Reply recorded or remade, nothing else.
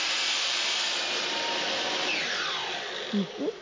recorded